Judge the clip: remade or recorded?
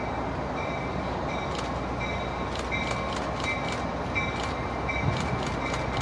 recorded